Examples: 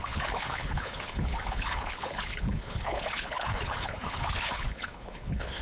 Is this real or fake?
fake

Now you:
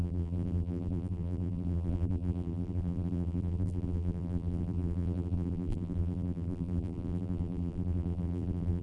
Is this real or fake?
fake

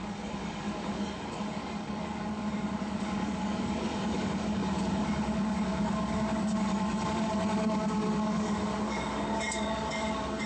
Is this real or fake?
fake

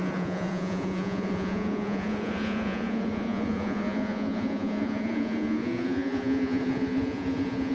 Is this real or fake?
fake